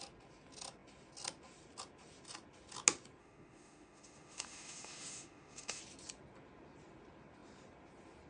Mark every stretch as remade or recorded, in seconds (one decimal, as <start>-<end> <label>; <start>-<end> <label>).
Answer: 0.0-3.2 recorded; 3.2-5.8 remade; 5.8-8.3 recorded